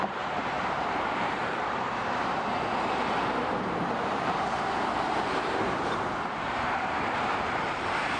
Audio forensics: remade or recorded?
remade